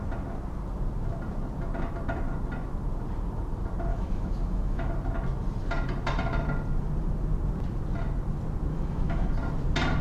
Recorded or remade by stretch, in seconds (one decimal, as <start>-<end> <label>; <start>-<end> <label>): 0.0-3.9 recorded; 3.9-4.9 remade; 4.9-8.7 recorded; 8.7-9.3 remade; 9.3-10.0 recorded